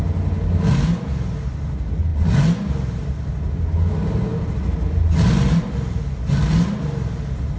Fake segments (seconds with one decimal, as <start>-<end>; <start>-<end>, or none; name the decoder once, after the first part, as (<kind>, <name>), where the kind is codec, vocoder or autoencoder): none